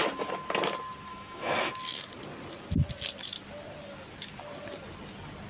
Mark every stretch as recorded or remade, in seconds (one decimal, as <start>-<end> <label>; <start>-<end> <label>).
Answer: 0.0-1.1 recorded; 1.1-1.7 remade; 1.7-5.5 recorded